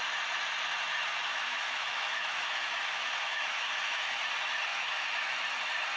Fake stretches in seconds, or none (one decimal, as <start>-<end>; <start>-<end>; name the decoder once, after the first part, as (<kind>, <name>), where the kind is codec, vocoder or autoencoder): 1.3-4.2 (autoencoder, DAC-VAE); 4.7-5.3